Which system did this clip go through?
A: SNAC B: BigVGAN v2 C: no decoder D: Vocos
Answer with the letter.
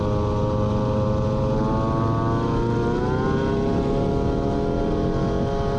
C